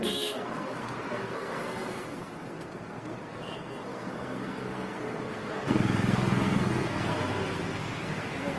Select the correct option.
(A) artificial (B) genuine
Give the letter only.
A